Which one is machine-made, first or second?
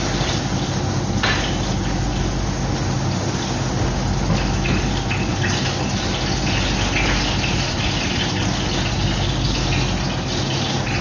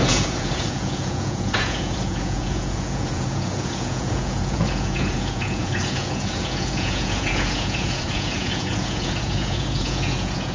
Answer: second